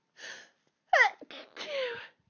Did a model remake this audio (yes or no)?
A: no